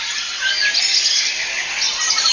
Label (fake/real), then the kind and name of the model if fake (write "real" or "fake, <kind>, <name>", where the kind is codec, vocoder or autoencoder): real